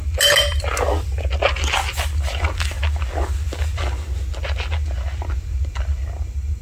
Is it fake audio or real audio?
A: real